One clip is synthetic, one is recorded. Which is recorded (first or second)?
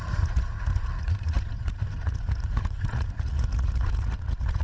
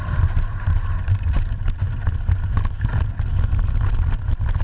second